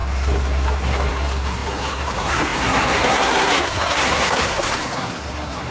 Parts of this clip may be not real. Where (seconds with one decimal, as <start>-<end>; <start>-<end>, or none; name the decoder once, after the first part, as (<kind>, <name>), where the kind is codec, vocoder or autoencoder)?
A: 0.0-5.7 (codec, SNAC)